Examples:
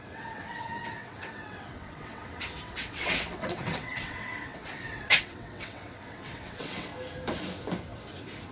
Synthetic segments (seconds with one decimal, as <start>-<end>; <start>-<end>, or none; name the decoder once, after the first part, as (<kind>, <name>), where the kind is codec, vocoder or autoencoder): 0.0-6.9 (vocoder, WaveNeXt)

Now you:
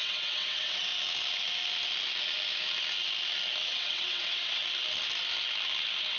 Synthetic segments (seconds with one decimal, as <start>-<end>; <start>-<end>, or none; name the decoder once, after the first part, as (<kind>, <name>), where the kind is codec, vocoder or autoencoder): 0.0-0.9 (vocoder, WaveNeXt); 3.7-4.6

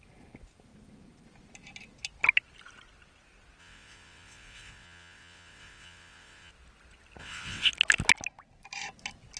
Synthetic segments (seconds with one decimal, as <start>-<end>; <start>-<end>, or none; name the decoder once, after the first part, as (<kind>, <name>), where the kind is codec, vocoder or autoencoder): 3.6-6.5 (vocoder, WaveNeXt); 7.2-7.7

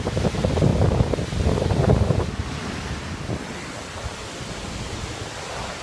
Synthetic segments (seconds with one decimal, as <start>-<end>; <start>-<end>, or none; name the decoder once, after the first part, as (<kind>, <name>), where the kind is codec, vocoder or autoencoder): none

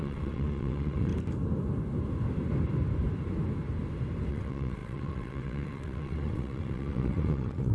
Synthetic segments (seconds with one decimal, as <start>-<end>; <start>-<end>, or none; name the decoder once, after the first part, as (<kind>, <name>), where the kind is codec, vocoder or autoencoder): 0.0-1.1 (vocoder, WaveNeXt); 4.3-7.7

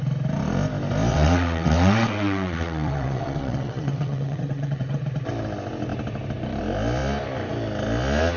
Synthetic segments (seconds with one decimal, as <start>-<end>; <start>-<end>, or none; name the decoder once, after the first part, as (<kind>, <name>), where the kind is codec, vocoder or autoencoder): 1.1-5.0 (vocoder, WaveNeXt)